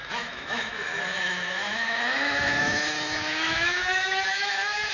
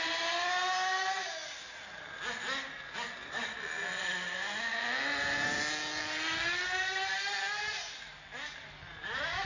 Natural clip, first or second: second